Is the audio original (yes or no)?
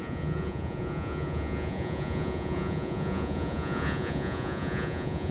no